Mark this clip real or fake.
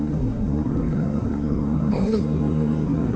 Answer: fake